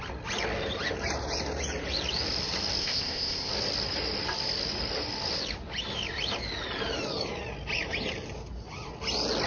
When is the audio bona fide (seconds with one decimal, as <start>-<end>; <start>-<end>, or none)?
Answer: 0.0-2.8; 3.5-9.5